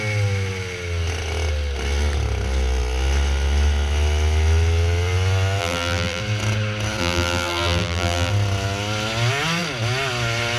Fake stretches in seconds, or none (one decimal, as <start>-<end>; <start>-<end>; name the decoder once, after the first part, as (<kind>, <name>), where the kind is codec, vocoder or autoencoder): 5.6-6.2 (vocoder, BigVGAN v2); 7.0-8.3

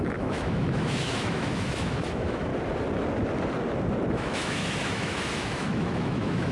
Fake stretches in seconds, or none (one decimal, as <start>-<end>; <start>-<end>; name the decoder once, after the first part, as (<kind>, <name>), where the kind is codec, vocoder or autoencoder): 0.0-2.5 (autoencoder, DAC-VAE); 4.1-6.5

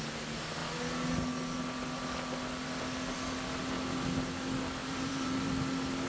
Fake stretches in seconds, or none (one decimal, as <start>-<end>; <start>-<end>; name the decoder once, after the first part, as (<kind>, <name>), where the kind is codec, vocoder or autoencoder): 4.8-5.5 (vocoder, BigVGAN v2)

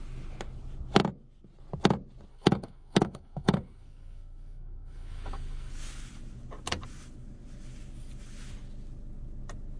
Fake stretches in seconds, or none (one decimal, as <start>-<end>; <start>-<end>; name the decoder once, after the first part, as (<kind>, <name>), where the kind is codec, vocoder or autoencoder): 2.3-5.7 (codec, SNAC)

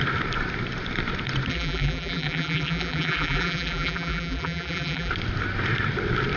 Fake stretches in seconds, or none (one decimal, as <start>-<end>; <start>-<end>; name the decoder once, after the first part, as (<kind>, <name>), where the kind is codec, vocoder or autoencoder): 1.5-5.1 (vocoder, BigVGAN v2)